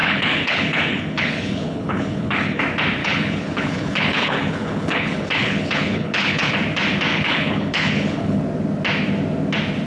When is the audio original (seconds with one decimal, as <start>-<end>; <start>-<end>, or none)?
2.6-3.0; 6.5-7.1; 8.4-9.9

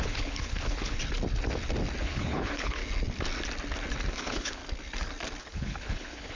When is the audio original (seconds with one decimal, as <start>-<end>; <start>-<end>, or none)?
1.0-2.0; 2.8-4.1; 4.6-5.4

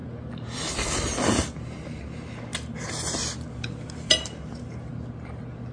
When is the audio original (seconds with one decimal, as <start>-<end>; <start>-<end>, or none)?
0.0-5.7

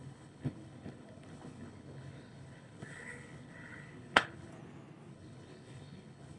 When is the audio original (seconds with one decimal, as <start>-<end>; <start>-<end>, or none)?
4.5-5.1